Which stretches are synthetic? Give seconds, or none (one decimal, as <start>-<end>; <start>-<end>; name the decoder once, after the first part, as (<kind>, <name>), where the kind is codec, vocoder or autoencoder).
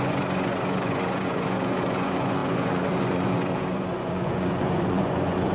0.0-5.5 (vocoder, Vocos)